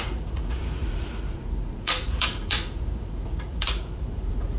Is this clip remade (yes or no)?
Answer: yes